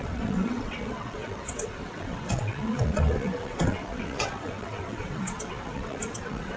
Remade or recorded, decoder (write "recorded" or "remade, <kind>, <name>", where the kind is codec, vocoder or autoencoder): remade, vocoder, WaveNeXt